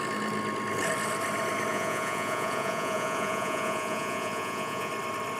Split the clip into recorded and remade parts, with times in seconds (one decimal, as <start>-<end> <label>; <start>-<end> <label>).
0.0-1.7 recorded; 1.7-4.9 remade; 4.9-5.4 recorded